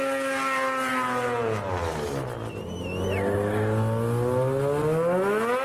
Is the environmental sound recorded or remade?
recorded